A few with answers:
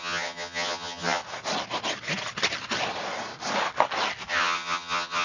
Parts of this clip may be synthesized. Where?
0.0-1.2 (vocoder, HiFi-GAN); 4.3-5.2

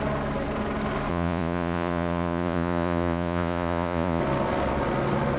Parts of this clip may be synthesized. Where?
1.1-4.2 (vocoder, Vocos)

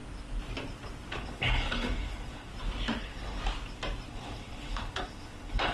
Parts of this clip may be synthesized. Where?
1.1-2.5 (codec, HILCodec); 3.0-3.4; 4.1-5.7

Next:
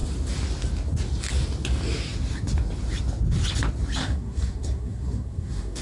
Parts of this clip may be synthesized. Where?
4.0-5.8 (codec, SNAC)

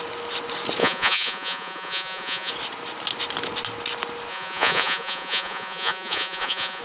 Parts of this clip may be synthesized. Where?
0.8-2.5 (vocoder, Vocos); 4.3-6.8

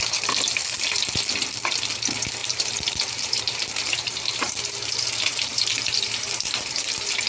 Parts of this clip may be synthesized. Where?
2.4-4.6 (vocoder, BigVGAN v2); 5.3-6.8